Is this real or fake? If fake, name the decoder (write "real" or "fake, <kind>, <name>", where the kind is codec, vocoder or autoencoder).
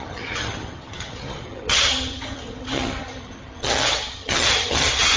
fake, vocoder, HiFi-GAN